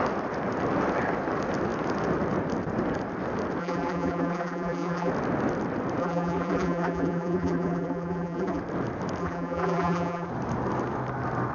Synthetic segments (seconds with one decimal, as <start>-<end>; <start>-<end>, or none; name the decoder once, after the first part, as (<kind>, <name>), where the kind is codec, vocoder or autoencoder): 3.6-5.1 (vocoder, BigVGAN v2); 6.0-8.6; 9.2-10.3